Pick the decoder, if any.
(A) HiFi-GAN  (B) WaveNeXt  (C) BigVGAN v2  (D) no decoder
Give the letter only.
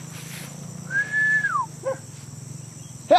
D